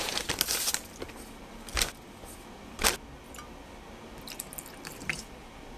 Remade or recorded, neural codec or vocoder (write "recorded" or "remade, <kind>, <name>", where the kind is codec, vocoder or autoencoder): recorded